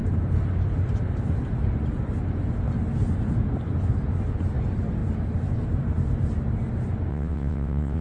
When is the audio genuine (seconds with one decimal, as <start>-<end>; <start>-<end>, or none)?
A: 0.0-7.1